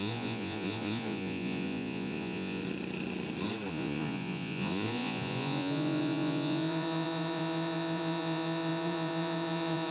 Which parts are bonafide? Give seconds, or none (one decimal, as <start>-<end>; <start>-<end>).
2.6-3.7